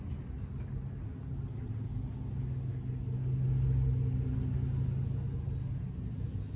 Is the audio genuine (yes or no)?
yes